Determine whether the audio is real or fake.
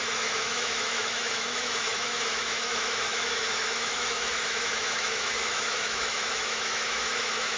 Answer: fake